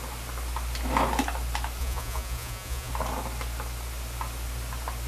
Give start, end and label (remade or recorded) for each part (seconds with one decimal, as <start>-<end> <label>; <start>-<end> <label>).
0.0-1.8 recorded; 1.8-2.9 remade; 2.9-5.1 recorded